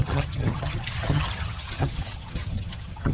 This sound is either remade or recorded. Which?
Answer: remade